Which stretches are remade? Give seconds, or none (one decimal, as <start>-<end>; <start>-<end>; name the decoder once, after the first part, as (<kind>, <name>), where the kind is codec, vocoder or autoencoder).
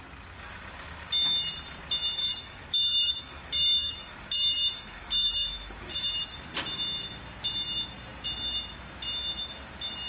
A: 2.2-6.1 (autoencoder, DAC-VAE)